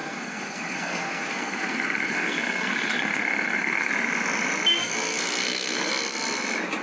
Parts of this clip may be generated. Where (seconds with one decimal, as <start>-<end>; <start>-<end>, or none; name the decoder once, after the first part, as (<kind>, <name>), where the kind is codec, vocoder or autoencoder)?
0.0-3.9 (codec, SNAC); 4.8-5.9

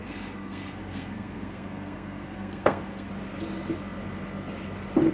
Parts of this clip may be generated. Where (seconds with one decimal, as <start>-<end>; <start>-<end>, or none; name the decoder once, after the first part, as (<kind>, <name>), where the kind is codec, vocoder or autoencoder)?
0.0-3.1 (codec, SNAC)

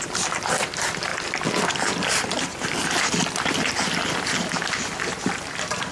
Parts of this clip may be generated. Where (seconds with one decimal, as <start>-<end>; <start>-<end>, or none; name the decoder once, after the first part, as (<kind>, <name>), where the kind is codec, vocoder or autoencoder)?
none

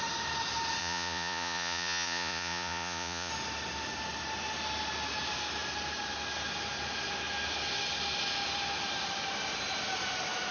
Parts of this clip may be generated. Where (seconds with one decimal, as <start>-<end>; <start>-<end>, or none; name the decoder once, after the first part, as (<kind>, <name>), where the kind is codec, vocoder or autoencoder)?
0.8-3.3 (vocoder, Vocos)

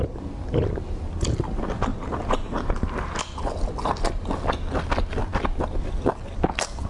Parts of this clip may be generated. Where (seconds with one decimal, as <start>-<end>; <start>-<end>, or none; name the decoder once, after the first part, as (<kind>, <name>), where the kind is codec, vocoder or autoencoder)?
1.9-3.2 (vocoder, BigVGAN v2)

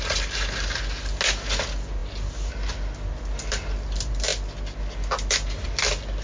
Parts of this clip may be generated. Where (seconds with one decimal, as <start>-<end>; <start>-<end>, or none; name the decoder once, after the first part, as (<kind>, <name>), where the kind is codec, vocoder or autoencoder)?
none

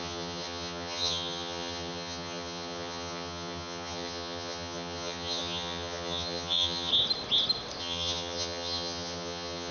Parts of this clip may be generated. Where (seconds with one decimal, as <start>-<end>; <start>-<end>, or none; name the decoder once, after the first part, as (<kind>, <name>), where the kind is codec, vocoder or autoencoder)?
0.0-6.9 (vocoder, HiFi-GAN); 7.8-9.7